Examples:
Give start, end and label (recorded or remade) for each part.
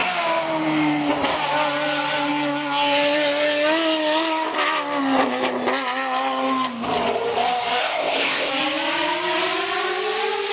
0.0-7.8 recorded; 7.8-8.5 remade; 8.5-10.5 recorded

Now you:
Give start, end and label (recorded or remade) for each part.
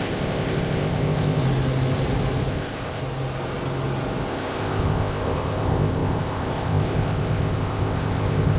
0.0-1.4 remade; 1.4-2.5 recorded; 2.5-3.0 remade; 3.0-4.3 recorded; 4.3-8.6 remade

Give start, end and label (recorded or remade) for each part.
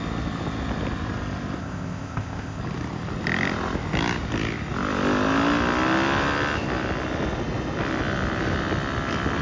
0.0-1.6 recorded; 1.6-2.6 remade; 2.6-9.4 recorded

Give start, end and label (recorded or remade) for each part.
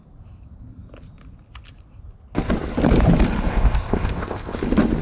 0.0-3.5 recorded; 3.5-4.6 remade; 4.6-5.0 recorded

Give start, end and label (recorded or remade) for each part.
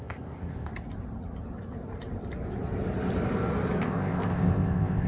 0.0-0.7 remade; 0.7-3.8 recorded; 3.8-5.1 remade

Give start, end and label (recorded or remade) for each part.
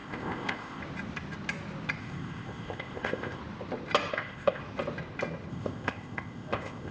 0.0-0.8 remade; 0.8-2.0 recorded; 2.0-3.4 remade; 3.4-4.1 recorded; 4.1-4.6 remade; 4.6-5.5 recorded; 5.5-6.9 remade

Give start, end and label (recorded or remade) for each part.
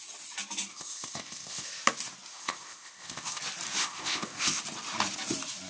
0.0-0.7 recorded; 0.7-1.8 remade; 1.8-2.3 recorded; 2.3-3.4 remade; 3.4-3.8 recorded; 3.8-4.6 remade; 4.6-5.7 recorded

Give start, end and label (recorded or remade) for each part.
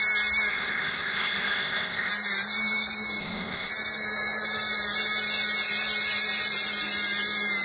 0.0-0.5 recorded; 0.5-2.1 remade; 2.1-3.2 recorded; 3.2-3.7 remade; 3.7-7.6 recorded